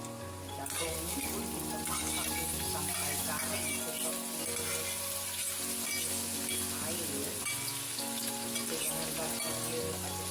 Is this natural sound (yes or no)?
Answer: yes